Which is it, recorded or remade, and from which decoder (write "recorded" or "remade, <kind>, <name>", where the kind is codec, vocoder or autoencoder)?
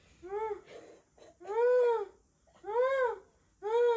recorded